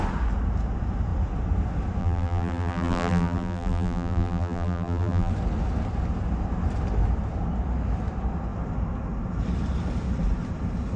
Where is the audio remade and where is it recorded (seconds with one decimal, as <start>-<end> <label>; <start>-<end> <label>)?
0.0-2.0 recorded; 2.0-5.3 remade; 5.3-11.0 recorded